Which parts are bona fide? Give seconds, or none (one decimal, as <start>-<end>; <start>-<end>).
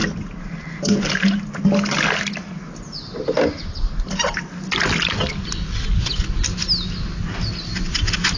0.0-8.4